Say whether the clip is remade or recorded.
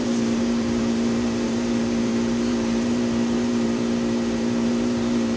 remade